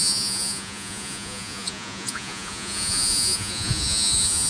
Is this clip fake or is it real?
fake